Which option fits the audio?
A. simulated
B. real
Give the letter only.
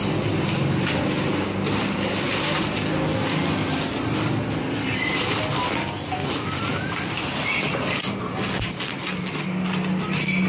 B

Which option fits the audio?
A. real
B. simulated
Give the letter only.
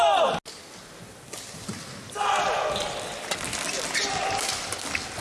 A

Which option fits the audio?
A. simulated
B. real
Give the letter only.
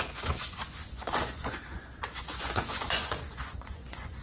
A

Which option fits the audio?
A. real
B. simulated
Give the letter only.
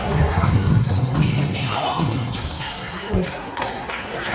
B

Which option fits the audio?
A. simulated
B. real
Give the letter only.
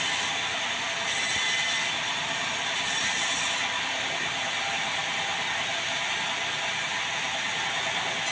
A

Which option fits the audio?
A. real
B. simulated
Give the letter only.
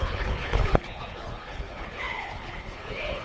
B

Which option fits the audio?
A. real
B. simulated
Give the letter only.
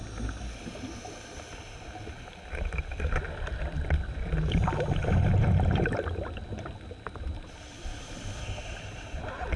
A